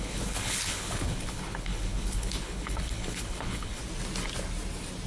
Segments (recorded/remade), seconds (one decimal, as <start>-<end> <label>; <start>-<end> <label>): 0.0-3.8 remade; 3.8-5.1 recorded